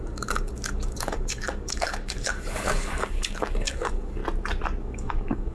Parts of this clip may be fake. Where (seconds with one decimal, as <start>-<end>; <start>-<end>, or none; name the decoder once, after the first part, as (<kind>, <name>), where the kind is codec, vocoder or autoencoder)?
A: 0.0-4.2 (codec, DAC); 4.8-5.5